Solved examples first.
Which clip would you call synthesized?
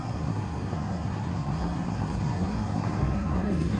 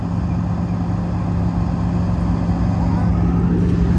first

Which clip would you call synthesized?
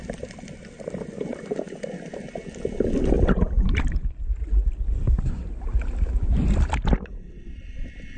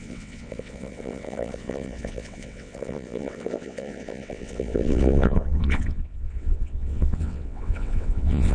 second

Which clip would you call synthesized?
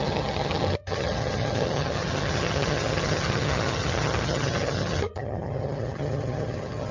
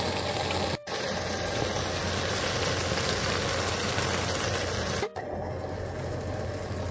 first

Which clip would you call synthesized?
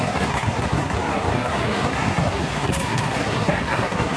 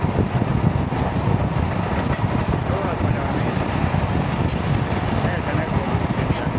first